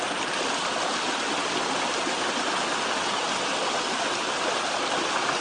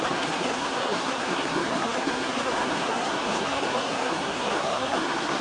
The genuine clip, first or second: first